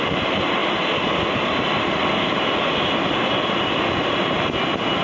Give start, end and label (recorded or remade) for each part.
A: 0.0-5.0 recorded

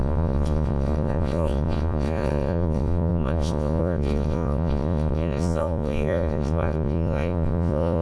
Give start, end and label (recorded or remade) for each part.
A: 0.0-8.0 remade

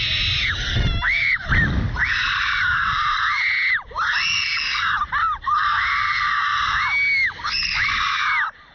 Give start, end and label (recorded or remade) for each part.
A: 0.0-0.4 recorded; 0.4-3.5 remade; 3.5-8.7 recorded

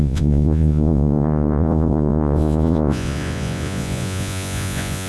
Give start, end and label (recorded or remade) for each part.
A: 0.0-5.1 remade

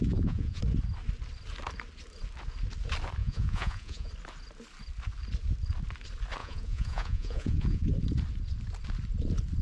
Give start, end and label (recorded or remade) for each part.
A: 0.0-0.6 remade; 0.6-3.2 recorded; 3.2-4.1 remade; 4.1-6.4 recorded; 6.4-7.9 remade; 7.9-9.6 recorded

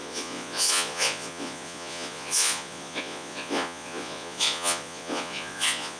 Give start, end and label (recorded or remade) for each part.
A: 0.0-6.0 remade